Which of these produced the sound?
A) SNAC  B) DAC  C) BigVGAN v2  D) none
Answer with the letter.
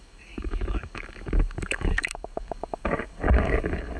B